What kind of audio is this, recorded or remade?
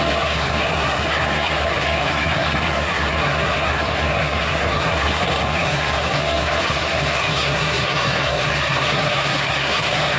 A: remade